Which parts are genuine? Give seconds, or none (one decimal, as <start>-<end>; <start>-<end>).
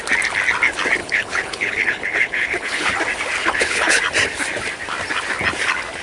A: 0.0-1.0; 2.9-3.4; 4.0-6.0